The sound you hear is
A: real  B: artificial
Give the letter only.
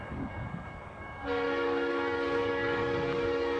B